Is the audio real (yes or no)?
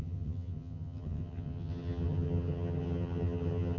no